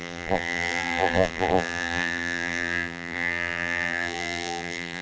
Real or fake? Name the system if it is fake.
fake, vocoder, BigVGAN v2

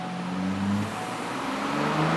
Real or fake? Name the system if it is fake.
real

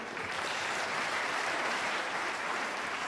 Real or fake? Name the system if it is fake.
fake, vocoder, BigVGAN v2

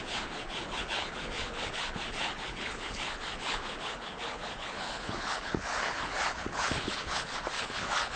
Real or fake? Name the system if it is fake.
fake, codec, HILCodec